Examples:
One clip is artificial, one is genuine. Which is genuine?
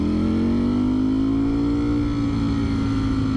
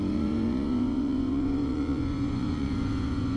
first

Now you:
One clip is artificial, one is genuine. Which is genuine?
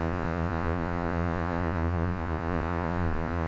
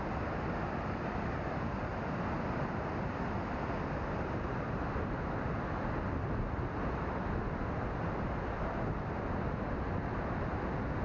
second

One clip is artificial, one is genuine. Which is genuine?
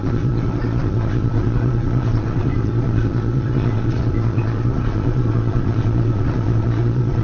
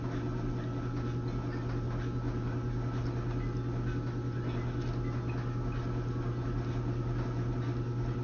second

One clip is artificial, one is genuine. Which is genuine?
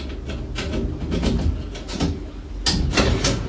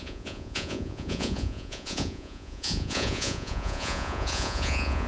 first